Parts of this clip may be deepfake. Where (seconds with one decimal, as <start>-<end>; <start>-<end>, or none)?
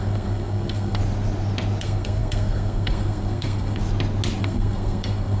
0.0-1.0; 1.8-3.8; 4.4-5.4